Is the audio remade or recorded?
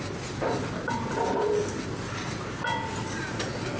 recorded